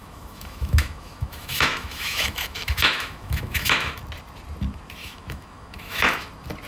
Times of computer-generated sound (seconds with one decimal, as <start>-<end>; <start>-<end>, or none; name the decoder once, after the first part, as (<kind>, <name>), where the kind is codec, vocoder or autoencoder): 0.0-4.0 (autoencoder, DAC-VAE); 5.0-6.3